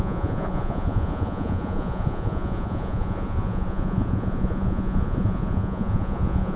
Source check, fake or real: fake